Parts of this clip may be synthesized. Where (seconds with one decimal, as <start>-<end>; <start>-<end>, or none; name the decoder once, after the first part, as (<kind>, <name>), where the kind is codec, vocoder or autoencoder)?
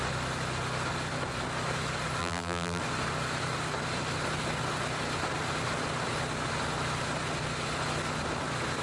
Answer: 2.2-2.8 (vocoder, BigVGAN v2)